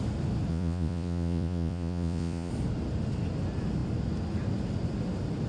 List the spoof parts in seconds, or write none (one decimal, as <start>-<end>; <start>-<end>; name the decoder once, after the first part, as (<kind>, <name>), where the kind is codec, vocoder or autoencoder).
0.5-2.5 (vocoder, Vocos)